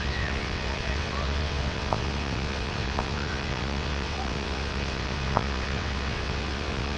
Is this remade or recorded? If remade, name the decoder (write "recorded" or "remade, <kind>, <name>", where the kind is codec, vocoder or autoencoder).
remade, vocoder, WaveNeXt